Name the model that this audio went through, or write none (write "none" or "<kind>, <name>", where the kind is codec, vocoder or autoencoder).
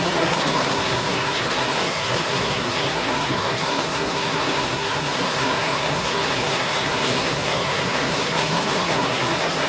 codec, SNAC